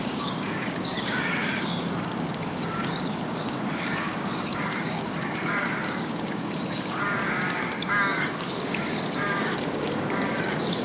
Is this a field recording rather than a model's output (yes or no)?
no